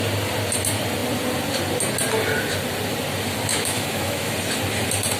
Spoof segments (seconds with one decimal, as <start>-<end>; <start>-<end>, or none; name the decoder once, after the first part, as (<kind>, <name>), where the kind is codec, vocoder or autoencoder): 3.5-4.3 (autoencoder, DAC-VAE)